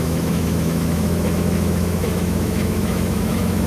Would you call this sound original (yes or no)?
no